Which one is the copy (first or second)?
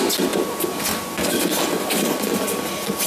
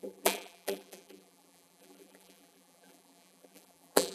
second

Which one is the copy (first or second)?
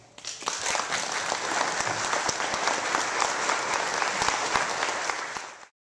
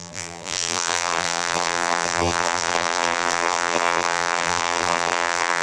second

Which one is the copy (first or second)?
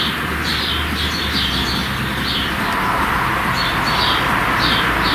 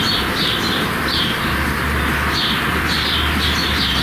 second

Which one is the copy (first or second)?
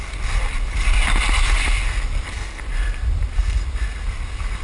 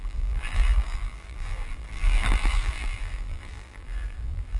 second